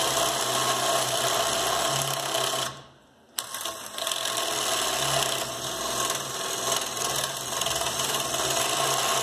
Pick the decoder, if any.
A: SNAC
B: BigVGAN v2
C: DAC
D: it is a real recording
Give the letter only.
D